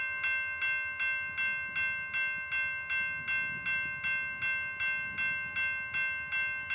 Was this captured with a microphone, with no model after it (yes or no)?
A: yes